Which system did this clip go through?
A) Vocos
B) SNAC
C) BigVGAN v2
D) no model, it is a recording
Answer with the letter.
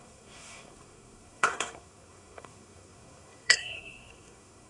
B